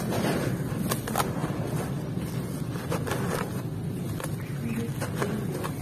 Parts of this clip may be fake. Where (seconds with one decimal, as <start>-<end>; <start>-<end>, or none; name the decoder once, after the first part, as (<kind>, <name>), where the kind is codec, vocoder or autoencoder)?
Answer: none